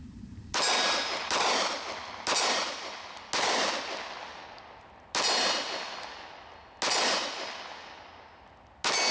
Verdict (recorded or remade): recorded